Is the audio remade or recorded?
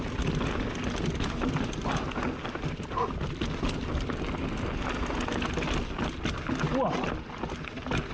recorded